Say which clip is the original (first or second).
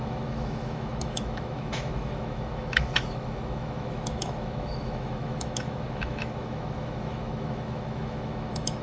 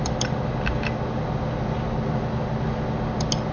second